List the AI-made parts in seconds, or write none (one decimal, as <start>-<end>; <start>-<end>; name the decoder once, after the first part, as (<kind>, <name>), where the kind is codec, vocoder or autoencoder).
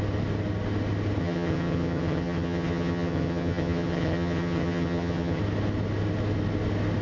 1.2-5.4 (vocoder, HiFi-GAN)